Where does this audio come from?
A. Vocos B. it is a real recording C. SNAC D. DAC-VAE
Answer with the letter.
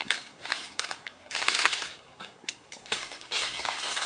C